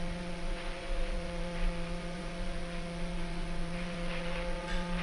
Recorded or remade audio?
remade